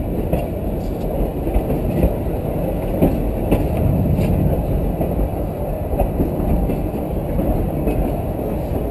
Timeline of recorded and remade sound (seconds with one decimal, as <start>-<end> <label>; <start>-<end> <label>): 0.0-8.9 recorded